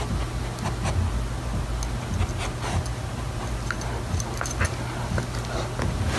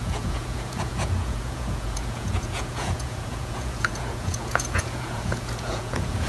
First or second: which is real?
first